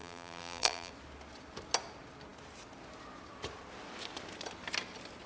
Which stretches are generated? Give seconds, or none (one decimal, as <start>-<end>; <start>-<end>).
0.0-0.9